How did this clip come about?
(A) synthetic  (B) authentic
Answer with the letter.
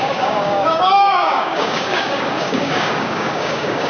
A